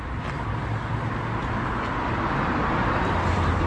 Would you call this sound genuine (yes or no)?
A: no